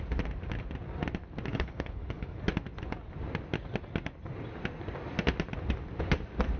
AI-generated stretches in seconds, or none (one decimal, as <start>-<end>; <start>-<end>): 1.5-2.4